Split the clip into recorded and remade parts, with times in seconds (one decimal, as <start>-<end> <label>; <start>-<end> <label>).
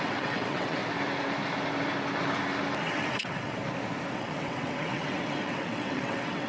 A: 0.0-0.8 remade; 0.8-2.8 recorded; 2.8-3.6 remade; 3.6-4.1 recorded; 4.1-6.5 remade